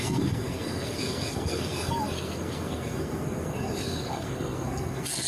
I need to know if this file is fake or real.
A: fake